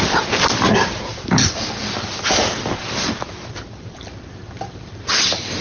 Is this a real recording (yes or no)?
no